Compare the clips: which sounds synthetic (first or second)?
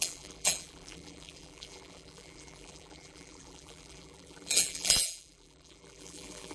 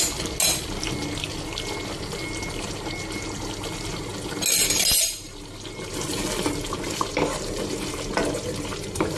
first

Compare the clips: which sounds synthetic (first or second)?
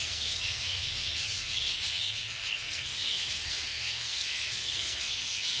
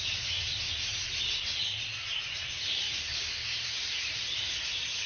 first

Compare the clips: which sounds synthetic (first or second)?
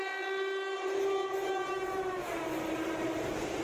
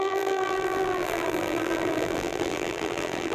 second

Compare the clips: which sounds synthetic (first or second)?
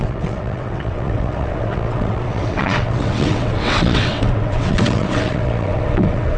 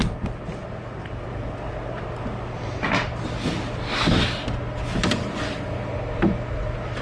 first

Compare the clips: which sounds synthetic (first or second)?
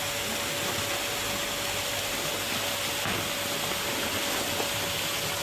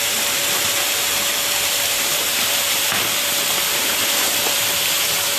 second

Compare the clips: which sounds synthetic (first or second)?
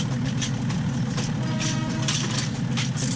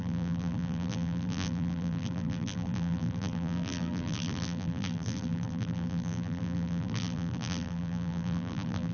second